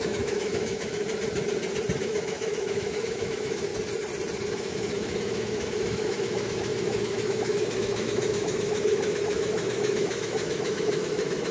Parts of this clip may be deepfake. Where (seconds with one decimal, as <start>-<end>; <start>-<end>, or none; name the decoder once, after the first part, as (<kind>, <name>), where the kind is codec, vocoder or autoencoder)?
0.0-1.0 (autoencoder, DAC-VAE); 2.0-3.7; 4.5-11.5